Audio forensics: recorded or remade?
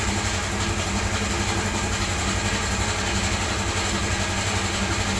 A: recorded